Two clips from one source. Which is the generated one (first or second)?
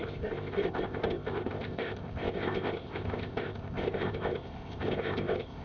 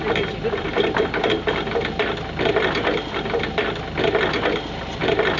first